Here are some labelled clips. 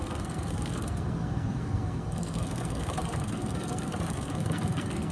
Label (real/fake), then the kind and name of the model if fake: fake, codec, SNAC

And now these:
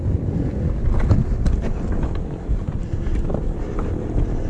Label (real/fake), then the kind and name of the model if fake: real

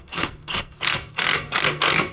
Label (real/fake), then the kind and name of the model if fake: fake, codec, SNAC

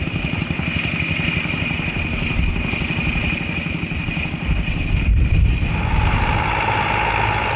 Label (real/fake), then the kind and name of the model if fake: real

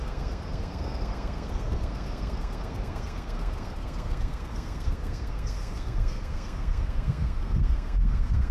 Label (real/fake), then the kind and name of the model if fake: fake, codec, SNAC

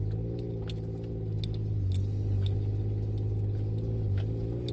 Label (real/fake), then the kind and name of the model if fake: real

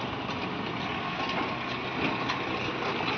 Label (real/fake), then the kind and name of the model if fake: real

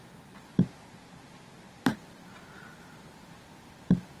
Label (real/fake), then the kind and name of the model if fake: real